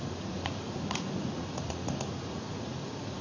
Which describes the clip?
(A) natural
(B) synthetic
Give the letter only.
B